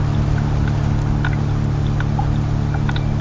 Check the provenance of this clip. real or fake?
real